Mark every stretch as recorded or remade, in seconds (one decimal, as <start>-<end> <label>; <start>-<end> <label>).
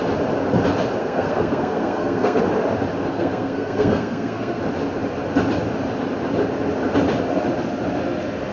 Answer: 0.0-1.0 recorded; 1.0-2.4 remade; 2.4-3.1 recorded; 3.1-4.6 remade; 4.6-8.5 recorded